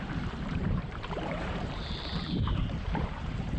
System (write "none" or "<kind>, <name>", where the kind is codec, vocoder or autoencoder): vocoder, BigVGAN v2